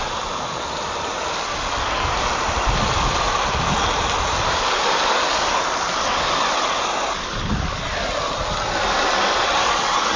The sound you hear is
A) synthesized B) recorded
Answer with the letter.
B